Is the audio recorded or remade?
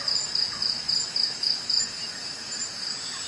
remade